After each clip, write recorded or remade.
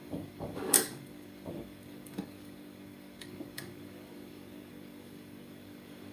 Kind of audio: remade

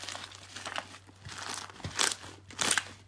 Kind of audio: recorded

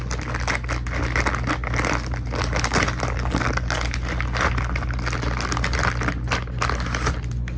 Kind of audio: recorded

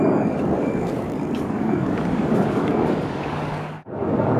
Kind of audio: remade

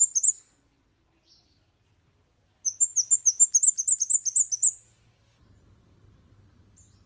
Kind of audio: recorded